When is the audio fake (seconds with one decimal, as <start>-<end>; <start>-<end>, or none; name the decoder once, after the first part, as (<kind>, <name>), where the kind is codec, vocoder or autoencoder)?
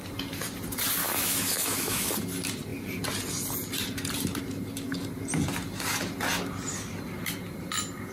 1.0-2.1 (autoencoder, DAC-VAE)